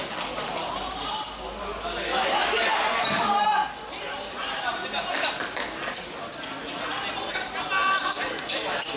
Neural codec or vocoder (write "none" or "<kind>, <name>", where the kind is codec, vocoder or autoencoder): none